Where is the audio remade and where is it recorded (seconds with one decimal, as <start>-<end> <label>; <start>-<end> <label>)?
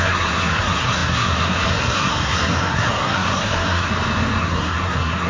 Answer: 0.0-3.9 remade; 3.9-4.4 recorded; 4.4-5.3 remade